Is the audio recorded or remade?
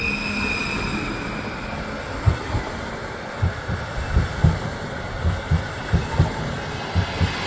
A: recorded